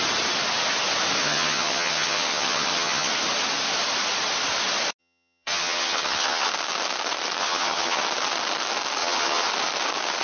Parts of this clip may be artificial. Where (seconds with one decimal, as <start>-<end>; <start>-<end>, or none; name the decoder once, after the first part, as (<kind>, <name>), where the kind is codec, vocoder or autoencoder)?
1.2-3.1 (vocoder, HiFi-GAN); 5.0-6.5; 7.4-8.0; 9.0-9.5